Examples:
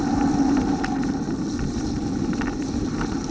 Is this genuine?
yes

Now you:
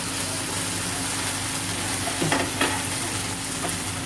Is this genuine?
yes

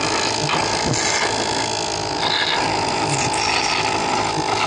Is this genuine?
yes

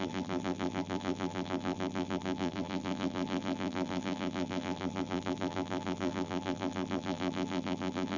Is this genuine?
no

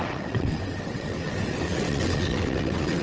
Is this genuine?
no